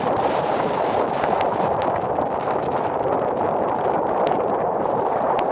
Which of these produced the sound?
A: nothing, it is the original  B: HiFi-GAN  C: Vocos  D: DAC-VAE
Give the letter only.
A